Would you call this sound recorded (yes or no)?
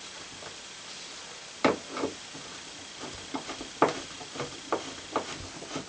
yes